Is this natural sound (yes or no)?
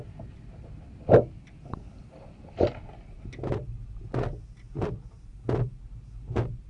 yes